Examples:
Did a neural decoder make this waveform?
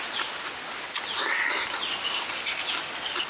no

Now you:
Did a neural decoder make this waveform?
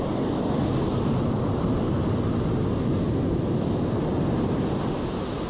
no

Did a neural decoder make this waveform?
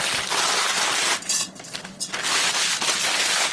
no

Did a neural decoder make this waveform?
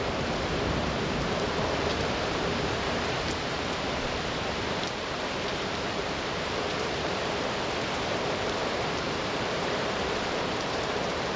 yes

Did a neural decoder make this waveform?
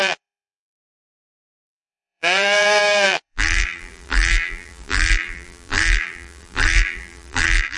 yes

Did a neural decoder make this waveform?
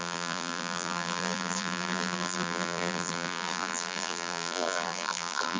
yes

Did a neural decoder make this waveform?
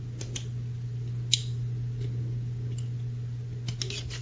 no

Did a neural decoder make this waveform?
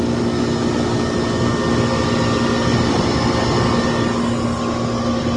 no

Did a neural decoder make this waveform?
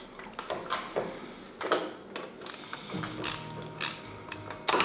no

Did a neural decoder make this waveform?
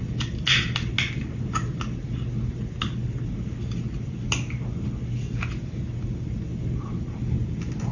no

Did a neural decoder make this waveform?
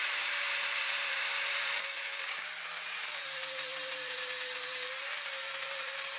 yes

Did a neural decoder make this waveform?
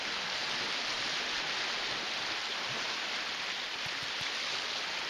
no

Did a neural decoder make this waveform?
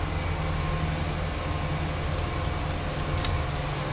no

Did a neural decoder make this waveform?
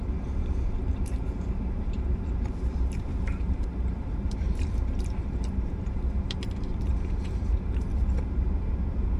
yes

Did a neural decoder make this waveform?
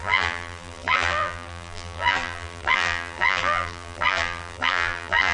yes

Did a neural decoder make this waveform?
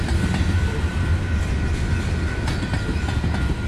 no